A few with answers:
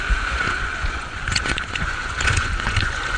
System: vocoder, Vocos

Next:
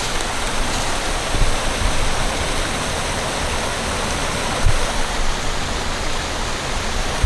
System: none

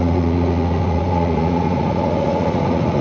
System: vocoder, Vocos